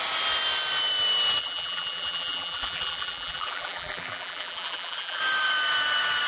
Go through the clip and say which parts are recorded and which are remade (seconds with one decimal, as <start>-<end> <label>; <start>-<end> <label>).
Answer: 0.0-1.4 recorded; 1.4-5.2 remade; 5.2-6.3 recorded